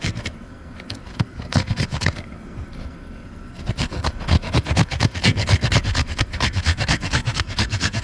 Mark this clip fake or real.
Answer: fake